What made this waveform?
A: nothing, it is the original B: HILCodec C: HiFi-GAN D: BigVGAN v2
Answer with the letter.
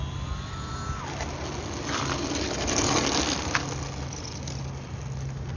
A